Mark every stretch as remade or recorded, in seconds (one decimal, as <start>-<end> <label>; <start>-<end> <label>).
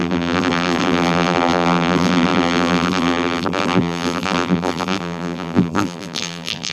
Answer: 0.0-6.7 remade